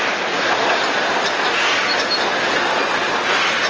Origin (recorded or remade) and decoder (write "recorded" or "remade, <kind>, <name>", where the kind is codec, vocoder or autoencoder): recorded